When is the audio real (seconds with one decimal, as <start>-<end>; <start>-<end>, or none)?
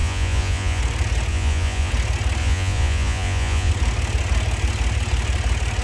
0.8-1.3; 1.9-2.4; 3.7-5.8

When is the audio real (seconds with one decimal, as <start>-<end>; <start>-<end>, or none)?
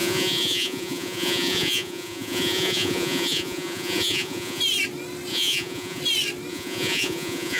4.6-5.3; 6.0-6.5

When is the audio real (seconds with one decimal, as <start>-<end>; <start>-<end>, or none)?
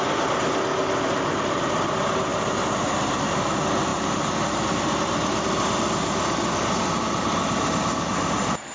0.0-8.7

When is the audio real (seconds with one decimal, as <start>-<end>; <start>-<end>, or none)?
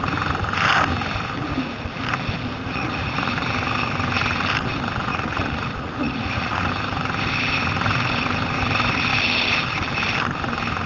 0.0-2.6; 3.3-5.1; 6.7-10.9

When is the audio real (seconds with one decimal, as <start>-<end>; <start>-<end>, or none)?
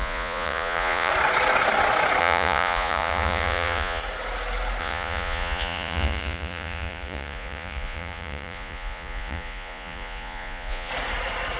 1.1-2.2; 4.0-4.8; 10.9-11.6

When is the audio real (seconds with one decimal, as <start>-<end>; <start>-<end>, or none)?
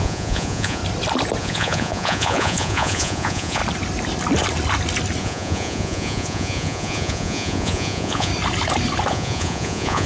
0.8-1.4; 3.6-5.2; 8.3-9.1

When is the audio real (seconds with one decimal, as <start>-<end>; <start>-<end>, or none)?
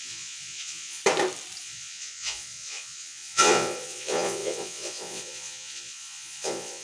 1.0-1.6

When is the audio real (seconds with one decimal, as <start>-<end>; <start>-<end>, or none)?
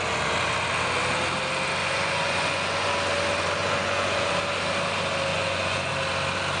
0.0-1.8; 2.9-3.6; 4.3-5.3; 5.9-6.6